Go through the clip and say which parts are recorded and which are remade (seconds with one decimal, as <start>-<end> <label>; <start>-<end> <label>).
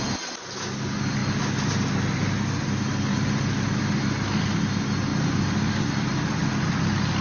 0.0-7.2 recorded